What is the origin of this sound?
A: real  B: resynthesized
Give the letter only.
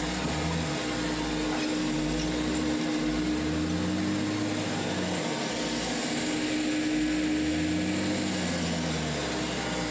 A